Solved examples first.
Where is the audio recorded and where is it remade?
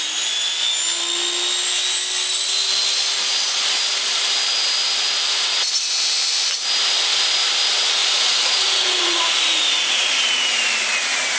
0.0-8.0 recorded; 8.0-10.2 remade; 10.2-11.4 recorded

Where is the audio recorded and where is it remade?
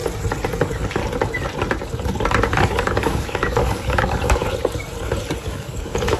0.0-0.6 recorded; 0.6-1.0 remade; 1.0-2.6 recorded; 2.6-4.4 remade; 4.4-5.4 recorded; 5.4-6.2 remade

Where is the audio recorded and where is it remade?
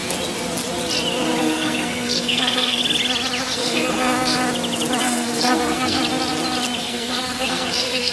0.0-1.4 recorded; 1.4-2.8 remade; 2.8-3.4 recorded; 3.4-4.4 remade; 4.4-5.0 recorded; 5.0-6.0 remade; 6.0-6.8 recorded; 6.8-8.1 remade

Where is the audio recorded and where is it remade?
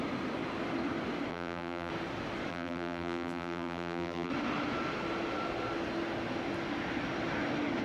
0.0-1.3 recorded; 1.3-1.9 remade; 1.9-2.5 recorded; 2.5-4.3 remade; 4.3-7.8 recorded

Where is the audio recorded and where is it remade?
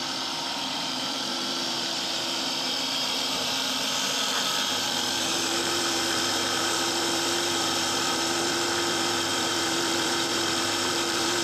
0.0-11.4 remade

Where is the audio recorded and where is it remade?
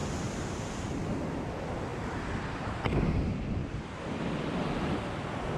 0.0-1.3 recorded; 1.3-5.6 remade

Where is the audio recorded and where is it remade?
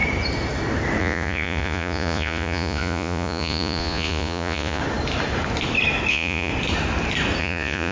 0.0-1.0 recorded; 1.0-4.8 remade; 4.8-6.1 recorded; 6.1-6.5 remade; 6.5-7.4 recorded; 7.4-7.9 remade